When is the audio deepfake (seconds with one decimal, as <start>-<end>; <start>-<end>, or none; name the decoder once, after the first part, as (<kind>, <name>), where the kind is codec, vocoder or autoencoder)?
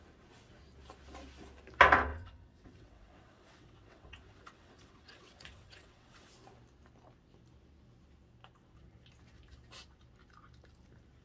2.1-6.3 (vocoder, WaveNeXt)